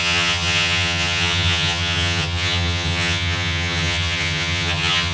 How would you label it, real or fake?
fake